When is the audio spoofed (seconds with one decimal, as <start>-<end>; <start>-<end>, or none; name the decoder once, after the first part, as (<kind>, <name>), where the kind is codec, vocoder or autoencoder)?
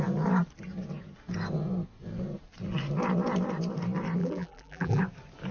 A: 4.2-5.0 (vocoder, BigVGAN v2)